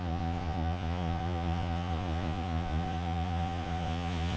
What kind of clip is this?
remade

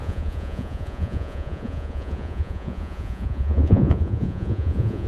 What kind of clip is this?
remade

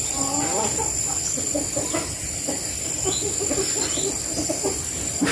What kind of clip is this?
recorded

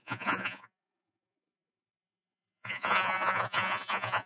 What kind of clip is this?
remade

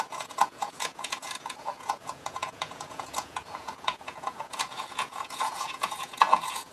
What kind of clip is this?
remade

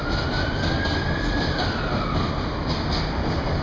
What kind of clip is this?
recorded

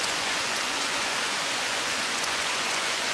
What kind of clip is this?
remade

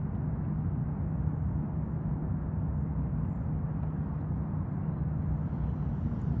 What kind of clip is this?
recorded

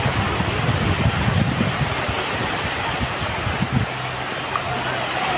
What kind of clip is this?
recorded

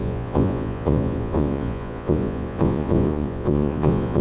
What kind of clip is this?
remade